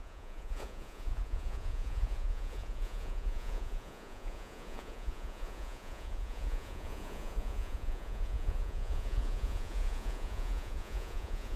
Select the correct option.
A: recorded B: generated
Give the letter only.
B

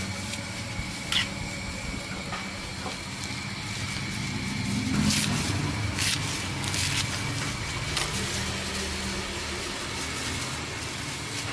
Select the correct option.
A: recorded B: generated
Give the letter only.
A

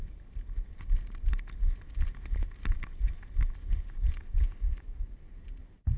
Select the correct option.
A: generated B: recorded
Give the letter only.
B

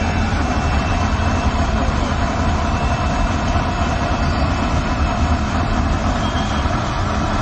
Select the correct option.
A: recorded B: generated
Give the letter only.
B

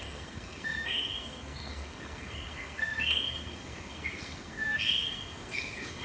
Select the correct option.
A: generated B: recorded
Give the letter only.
A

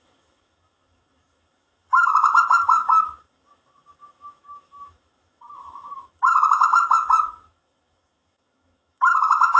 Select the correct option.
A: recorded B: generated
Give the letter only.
B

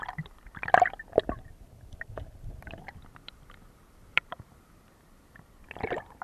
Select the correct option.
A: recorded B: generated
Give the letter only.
B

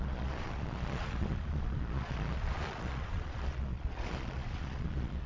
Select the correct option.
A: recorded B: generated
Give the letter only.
B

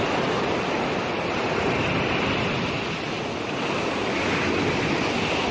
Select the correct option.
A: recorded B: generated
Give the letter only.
A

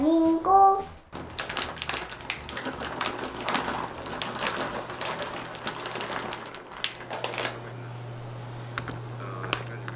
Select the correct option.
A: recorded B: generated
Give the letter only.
A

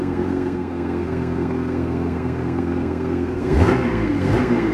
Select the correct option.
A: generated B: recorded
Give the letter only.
A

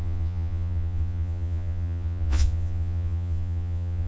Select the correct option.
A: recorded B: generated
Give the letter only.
B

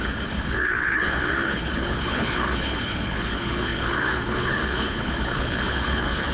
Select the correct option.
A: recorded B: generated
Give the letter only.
B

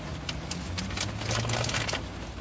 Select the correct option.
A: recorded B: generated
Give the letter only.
A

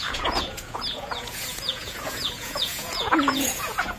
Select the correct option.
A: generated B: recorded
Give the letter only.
A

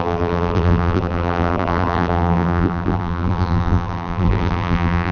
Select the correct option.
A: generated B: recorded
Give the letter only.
A